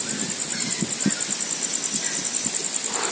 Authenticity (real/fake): real